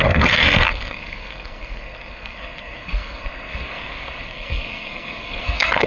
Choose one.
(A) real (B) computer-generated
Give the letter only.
B